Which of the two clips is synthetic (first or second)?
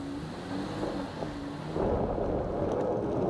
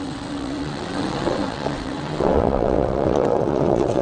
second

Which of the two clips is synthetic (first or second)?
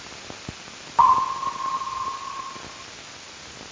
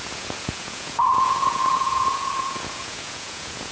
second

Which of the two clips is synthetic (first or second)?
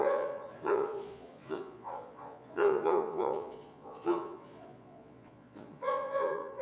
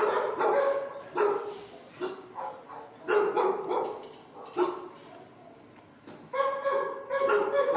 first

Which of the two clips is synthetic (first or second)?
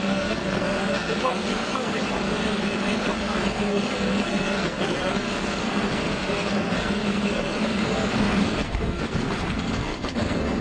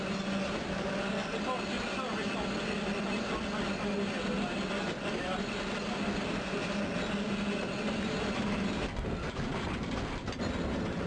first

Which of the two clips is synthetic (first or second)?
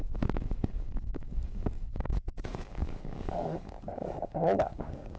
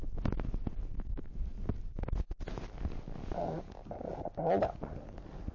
first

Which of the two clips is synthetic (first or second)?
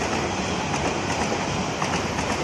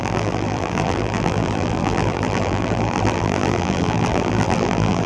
second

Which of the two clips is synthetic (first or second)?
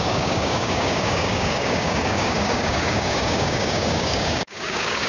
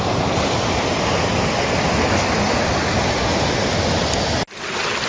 first